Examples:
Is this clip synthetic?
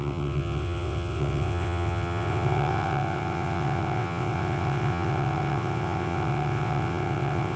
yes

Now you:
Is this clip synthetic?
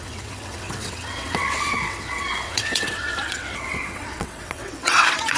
yes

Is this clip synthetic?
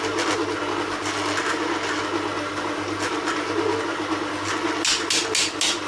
no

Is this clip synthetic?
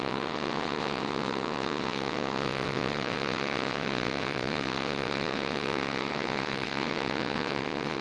yes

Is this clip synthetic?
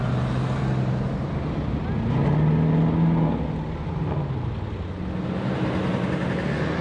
no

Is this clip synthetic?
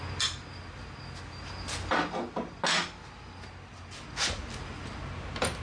no